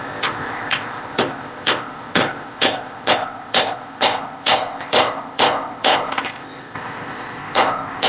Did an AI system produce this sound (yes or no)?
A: yes